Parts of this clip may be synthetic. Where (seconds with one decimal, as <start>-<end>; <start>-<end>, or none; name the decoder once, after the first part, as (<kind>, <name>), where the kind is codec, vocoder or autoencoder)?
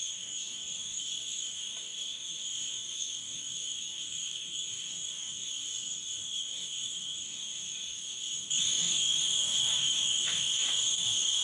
0.0-11.4 (codec, DAC)